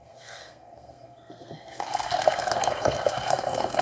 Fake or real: fake